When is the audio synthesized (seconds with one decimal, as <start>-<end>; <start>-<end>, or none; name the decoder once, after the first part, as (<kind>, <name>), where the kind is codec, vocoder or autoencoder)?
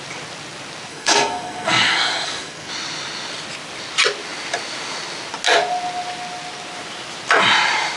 0.9-2.7 (codec, SNAC)